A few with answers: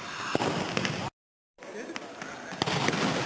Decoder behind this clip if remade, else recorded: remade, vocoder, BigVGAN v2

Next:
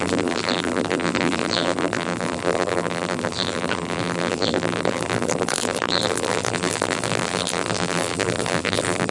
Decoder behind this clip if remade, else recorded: remade, vocoder, BigVGAN v2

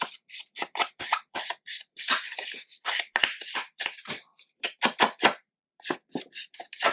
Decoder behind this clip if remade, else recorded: remade, vocoder, BigVGAN v2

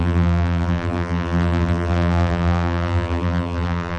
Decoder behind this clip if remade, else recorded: remade, vocoder, BigVGAN v2